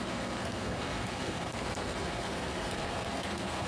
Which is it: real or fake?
fake